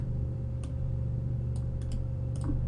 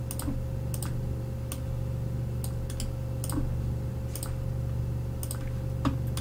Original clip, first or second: second